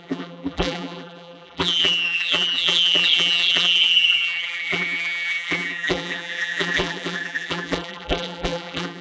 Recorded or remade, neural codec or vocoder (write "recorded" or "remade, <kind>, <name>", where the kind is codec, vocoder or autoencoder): remade, vocoder, BigVGAN v2